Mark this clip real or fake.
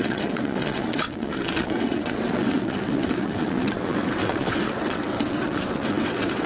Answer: fake